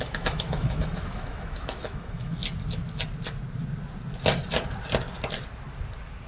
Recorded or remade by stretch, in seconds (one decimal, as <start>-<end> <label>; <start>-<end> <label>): 0.0-2.4 remade; 2.4-6.3 recorded